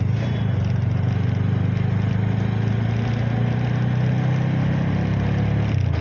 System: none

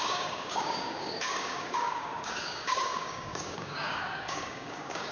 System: codec, DAC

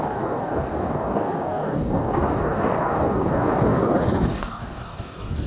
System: codec, DAC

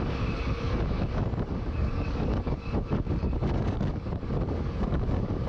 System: codec, DAC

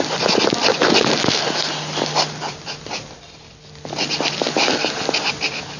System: none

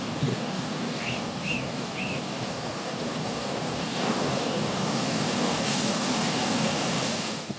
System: codec, DAC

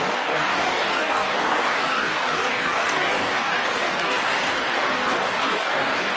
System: codec, DAC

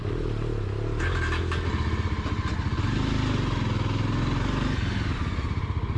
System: none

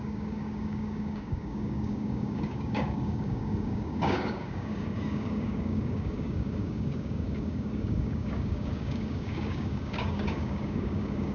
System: codec, DAC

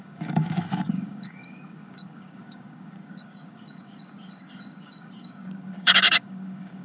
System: codec, DAC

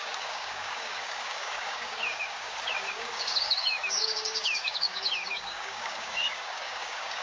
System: codec, DAC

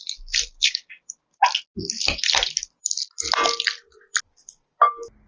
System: none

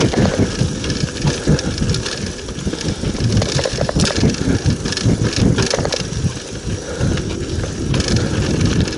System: none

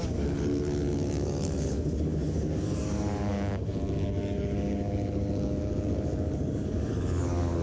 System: codec, DAC